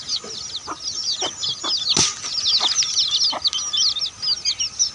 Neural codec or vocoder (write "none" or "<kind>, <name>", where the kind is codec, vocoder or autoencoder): none